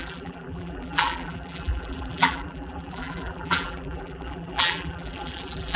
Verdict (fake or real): fake